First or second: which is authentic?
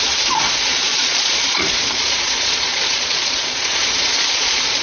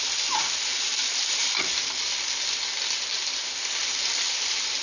second